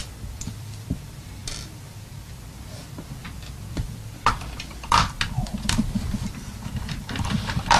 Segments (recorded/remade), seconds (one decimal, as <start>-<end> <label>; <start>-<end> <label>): 0.0-7.8 remade